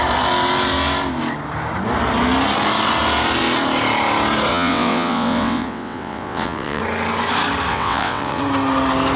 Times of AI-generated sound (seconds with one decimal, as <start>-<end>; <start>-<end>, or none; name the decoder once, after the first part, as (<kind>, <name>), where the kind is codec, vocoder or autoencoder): 4.5-6.8 (vocoder, WaveNeXt); 7.7-8.4